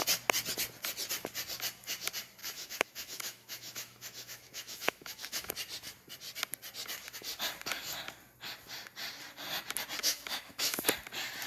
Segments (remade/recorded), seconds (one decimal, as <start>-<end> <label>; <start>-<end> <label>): 0.0-2.4 recorded; 2.4-5.5 remade; 5.5-10.0 recorded; 10.0-10.8 remade; 10.8-11.5 recorded

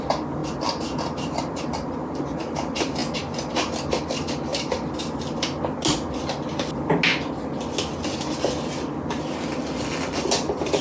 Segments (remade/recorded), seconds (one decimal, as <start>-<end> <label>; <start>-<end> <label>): 0.0-10.8 recorded

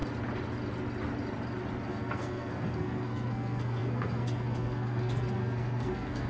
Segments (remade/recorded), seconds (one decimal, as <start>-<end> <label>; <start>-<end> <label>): 0.0-1.9 recorded; 1.9-6.3 remade

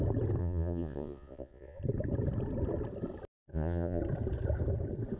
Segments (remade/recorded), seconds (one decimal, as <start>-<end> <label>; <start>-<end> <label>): 0.0-0.4 recorded; 0.4-1.8 remade; 1.8-3.5 recorded; 3.5-4.0 remade; 4.0-5.2 recorded

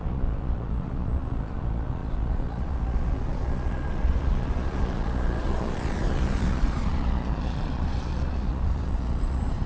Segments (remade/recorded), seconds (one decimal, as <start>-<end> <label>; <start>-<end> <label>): 0.0-9.7 remade

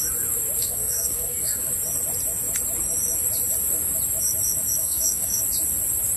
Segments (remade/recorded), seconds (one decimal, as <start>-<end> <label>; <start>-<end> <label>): 0.0-0.6 recorded; 0.6-1.7 remade; 1.7-4.8 recorded; 4.8-5.4 remade; 5.4-6.2 recorded

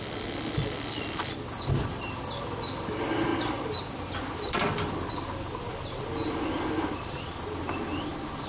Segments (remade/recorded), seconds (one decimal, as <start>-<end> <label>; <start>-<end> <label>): 0.0-8.5 recorded